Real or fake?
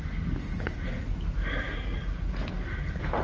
real